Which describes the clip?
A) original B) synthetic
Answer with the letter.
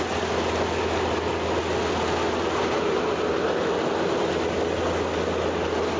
A